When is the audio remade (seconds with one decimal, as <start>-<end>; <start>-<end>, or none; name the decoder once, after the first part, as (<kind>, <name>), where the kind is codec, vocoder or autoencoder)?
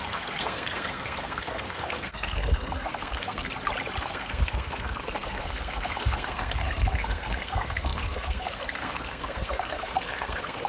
0.0-3.5 (codec, SNAC); 4.0-10.7